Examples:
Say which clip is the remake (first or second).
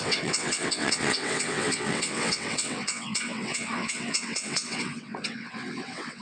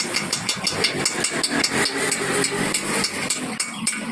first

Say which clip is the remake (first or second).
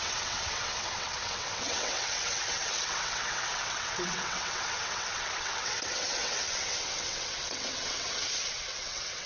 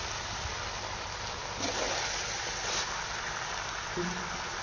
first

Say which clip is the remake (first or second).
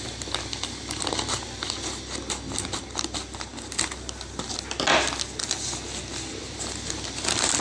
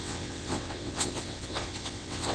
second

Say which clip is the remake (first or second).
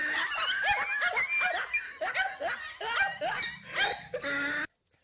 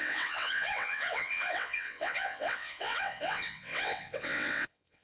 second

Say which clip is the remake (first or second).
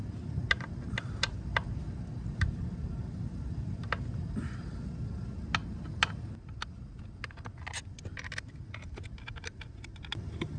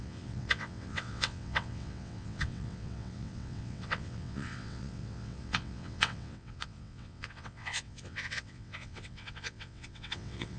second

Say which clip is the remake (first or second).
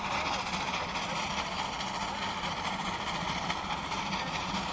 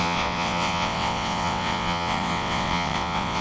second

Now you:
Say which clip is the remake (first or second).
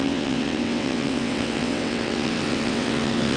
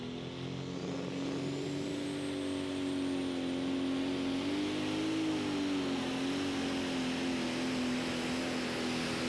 first